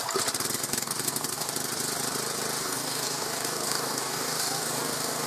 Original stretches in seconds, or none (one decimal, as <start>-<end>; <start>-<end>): 0.0-0.7; 1.5-2.6

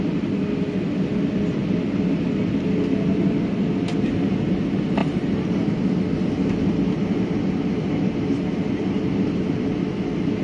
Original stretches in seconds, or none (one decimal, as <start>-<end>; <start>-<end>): 0.0-10.4

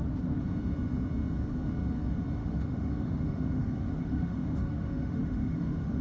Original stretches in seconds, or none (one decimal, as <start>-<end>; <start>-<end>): 0.0-2.4

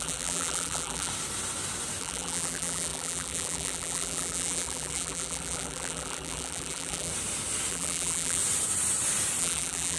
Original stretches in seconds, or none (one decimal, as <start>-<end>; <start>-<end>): 1.1-2.0; 7.1-7.7; 8.4-9.4

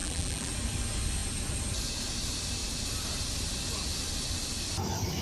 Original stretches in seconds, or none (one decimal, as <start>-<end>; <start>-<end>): 0.5-5.2

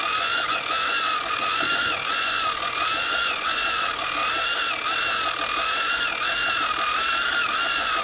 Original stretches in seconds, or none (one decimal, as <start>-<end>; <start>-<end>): 4.2-7.5

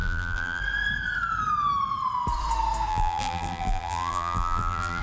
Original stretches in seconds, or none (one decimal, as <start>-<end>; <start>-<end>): 0.6-2.9